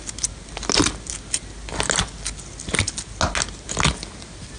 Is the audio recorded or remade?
recorded